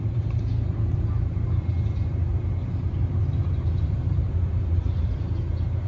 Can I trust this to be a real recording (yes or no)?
no